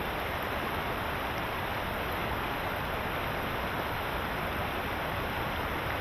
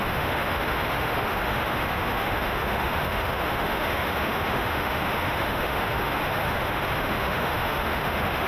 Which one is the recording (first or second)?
first